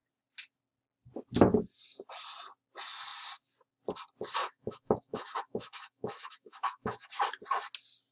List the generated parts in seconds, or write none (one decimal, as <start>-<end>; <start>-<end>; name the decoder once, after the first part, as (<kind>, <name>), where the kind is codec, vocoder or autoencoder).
4.4-7.1 (autoencoder, DAC-VAE)